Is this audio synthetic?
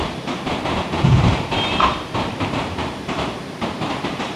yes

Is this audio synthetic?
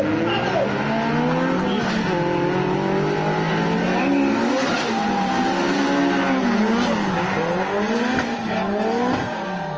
no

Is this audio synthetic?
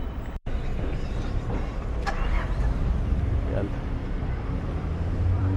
yes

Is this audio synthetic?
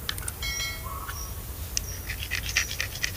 no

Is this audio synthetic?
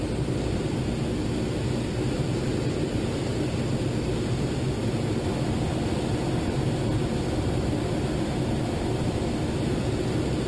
no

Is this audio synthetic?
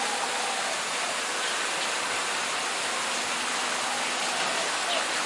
no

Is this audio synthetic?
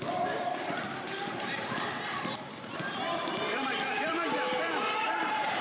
yes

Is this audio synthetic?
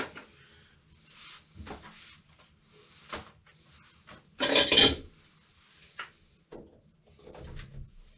no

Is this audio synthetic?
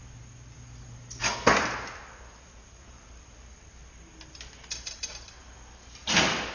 no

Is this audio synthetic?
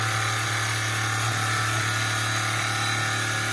no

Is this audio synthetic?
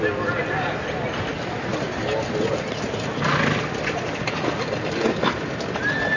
no